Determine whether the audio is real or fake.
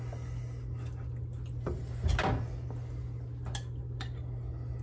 real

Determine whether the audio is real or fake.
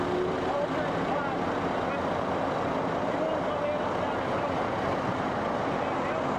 real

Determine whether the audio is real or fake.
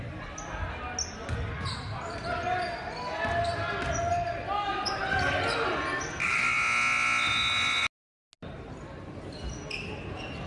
real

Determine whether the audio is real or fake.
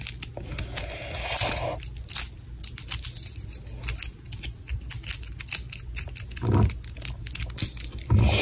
real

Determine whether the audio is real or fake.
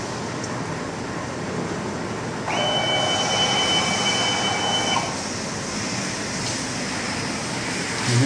real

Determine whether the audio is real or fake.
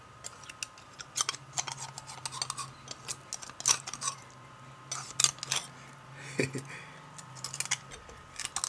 real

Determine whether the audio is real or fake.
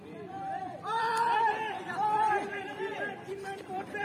fake